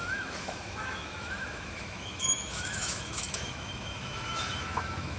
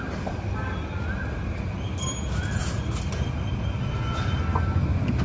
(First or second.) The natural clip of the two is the second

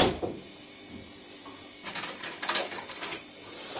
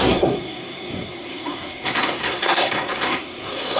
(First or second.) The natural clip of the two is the first